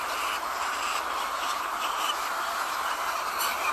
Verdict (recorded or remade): remade